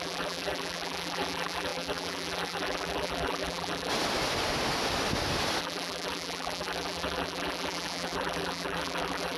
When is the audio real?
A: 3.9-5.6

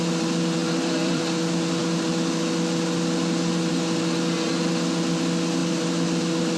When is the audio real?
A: 0.0-0.6; 1.2-6.6

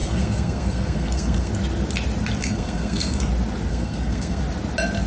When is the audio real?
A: 1.5-2.4; 3.3-3.7; 4.4-5.1

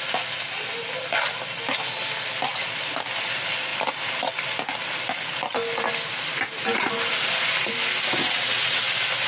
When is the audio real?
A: 0.0-8.2; 8.9-9.3

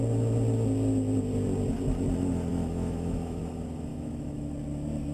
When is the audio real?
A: 0.0-2.5; 3.4-3.9; 4.5-5.1